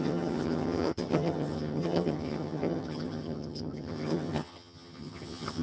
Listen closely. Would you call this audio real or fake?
fake